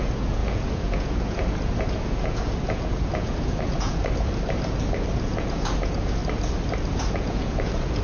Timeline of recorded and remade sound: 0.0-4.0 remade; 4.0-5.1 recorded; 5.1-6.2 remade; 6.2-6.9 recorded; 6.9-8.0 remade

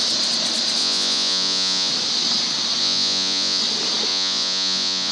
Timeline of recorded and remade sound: 0.0-0.8 recorded; 0.8-1.9 remade; 1.9-2.8 recorded; 2.8-3.6 remade; 3.6-4.1 recorded; 4.1-5.1 remade

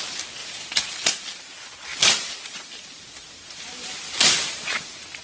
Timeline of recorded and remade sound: 0.0-0.4 recorded; 0.4-0.9 remade; 0.9-5.2 recorded